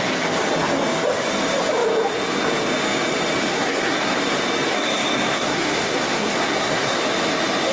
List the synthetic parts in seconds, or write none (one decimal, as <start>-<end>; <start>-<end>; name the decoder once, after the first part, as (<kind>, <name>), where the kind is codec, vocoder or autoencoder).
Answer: 3.5-4.2 (codec, SNAC); 4.7-7.0